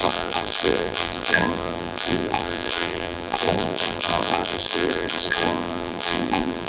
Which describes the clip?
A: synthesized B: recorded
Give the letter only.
A